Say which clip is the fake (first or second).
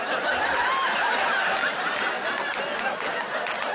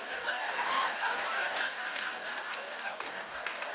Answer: second